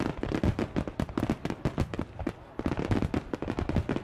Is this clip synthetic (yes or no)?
no